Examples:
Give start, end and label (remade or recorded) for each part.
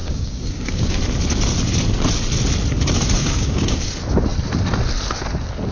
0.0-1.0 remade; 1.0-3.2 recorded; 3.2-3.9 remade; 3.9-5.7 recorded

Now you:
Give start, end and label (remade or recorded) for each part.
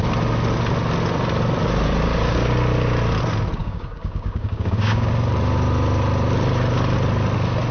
0.0-3.6 recorded; 3.6-5.1 remade; 5.1-7.7 recorded